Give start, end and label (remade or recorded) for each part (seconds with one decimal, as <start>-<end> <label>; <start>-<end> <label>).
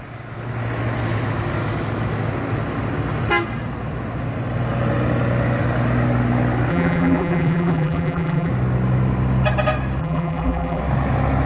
0.0-6.7 recorded; 6.7-8.5 remade; 8.5-10.0 recorded; 10.0-10.8 remade; 10.8-11.5 recorded